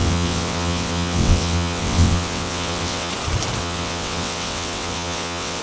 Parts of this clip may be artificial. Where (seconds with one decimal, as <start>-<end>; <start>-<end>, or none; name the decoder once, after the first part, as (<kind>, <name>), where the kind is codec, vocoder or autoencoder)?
0.0-3.1 (vocoder, WaveNeXt); 3.6-5.6